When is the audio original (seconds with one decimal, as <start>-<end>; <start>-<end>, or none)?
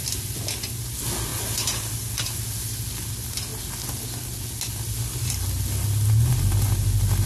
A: 0.0-7.3